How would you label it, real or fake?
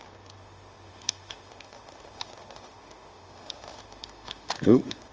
fake